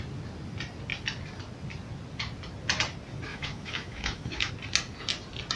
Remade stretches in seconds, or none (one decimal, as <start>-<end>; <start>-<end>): 3.3-4.5